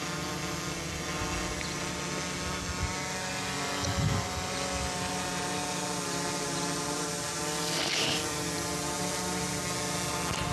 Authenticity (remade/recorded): recorded